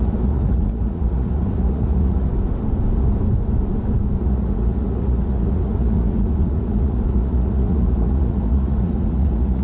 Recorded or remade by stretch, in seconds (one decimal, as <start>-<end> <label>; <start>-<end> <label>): 0.0-2.3 remade; 2.3-4.2 recorded; 4.2-9.6 remade